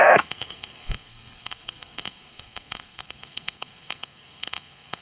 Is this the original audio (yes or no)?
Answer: no